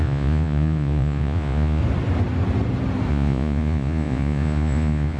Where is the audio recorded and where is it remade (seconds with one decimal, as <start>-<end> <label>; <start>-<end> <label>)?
0.0-1.8 remade; 1.8-3.1 recorded; 3.1-5.2 remade